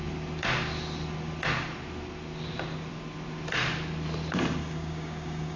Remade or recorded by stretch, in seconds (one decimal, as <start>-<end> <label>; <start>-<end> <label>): 0.0-4.6 recorded; 4.6-5.6 remade